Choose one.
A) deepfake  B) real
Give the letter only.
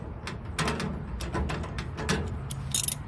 B